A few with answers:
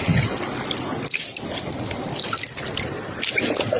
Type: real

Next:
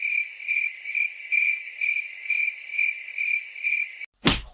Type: real